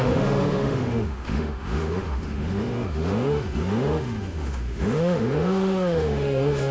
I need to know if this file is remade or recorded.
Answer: remade